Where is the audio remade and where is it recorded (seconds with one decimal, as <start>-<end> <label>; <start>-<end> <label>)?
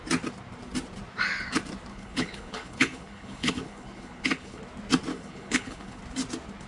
0.0-1.9 recorded; 1.9-4.6 remade; 4.6-5.1 recorded; 5.1-6.0 remade; 6.0-6.7 recorded